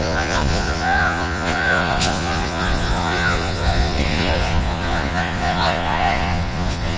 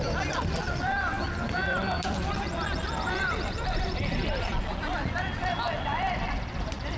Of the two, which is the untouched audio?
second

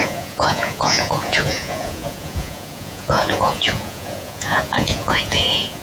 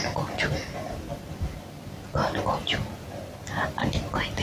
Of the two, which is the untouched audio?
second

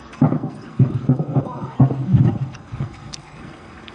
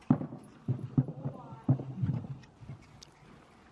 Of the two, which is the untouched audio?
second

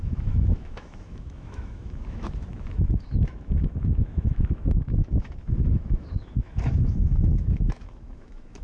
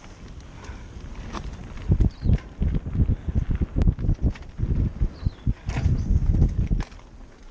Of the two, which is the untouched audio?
second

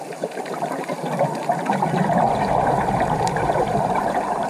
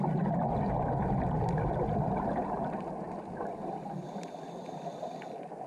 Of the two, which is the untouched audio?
second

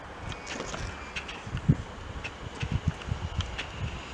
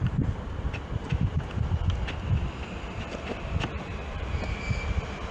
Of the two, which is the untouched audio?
first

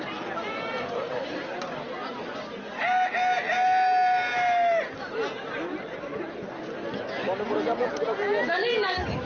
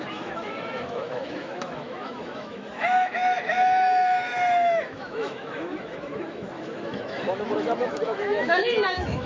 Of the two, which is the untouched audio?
first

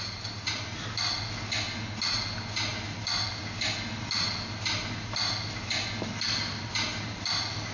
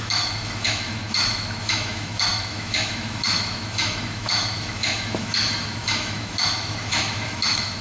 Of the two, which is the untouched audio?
first